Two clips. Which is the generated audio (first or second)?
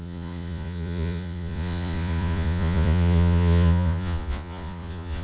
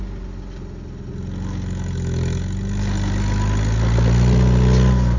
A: first